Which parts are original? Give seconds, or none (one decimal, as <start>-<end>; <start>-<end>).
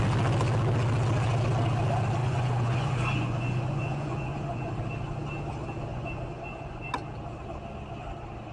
0.0-2.2; 4.7-5.9; 6.9-8.5